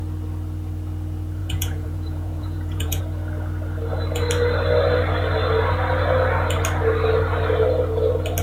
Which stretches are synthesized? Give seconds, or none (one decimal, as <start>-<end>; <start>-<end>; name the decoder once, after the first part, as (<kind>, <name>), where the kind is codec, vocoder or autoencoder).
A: 1.4-3.0 (vocoder, Vocos)